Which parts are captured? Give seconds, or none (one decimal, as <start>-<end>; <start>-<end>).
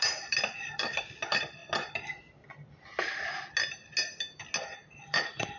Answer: 1.6-5.0